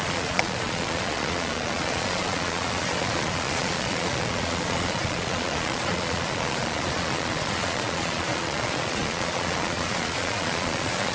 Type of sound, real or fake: fake